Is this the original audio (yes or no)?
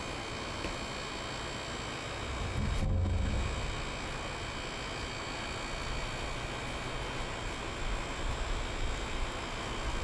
yes